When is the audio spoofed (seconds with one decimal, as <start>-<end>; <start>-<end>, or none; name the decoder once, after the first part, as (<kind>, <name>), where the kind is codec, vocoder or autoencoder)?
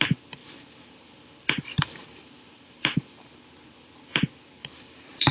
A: 0.4-3.4 (vocoder, BigVGAN v2); 4.6-5.3